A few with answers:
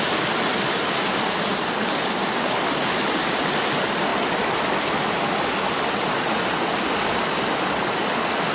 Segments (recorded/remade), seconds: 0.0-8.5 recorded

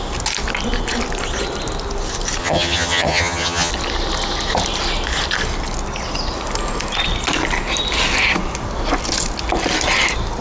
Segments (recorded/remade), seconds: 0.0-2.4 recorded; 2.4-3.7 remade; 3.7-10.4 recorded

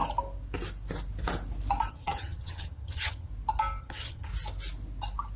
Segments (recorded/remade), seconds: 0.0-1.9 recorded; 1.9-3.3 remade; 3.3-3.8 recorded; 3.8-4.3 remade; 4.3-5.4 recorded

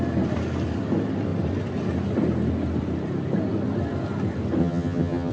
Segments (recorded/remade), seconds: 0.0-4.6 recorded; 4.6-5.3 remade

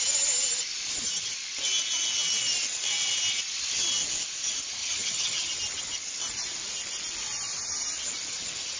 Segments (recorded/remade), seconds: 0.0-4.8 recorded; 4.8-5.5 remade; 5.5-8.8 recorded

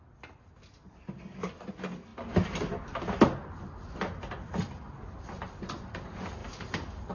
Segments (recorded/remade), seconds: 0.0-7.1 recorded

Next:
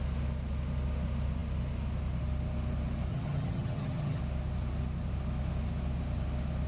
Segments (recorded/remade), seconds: 0.0-3.1 recorded; 3.1-4.2 remade; 4.2-6.7 recorded

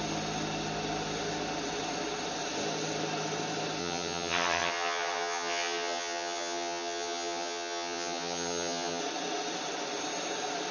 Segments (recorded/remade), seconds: 0.0-3.8 recorded; 3.8-9.0 remade; 9.0-10.7 recorded